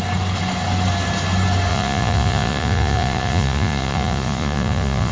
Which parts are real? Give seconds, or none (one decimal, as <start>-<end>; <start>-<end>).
0.0-1.7